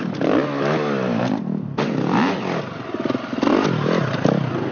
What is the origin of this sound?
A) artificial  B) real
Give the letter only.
B